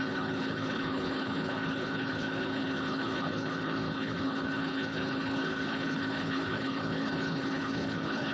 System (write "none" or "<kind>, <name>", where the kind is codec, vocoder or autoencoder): codec, HILCodec